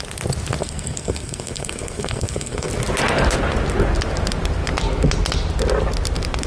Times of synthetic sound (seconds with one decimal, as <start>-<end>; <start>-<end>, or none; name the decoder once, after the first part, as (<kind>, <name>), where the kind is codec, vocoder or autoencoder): 0.6-2.7 (codec, SNAC)